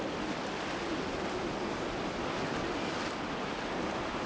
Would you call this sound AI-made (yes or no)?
no